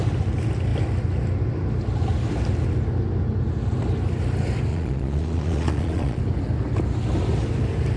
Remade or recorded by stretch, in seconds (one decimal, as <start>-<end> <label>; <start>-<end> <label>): 0.0-4.7 recorded; 4.7-6.2 remade; 6.2-8.0 recorded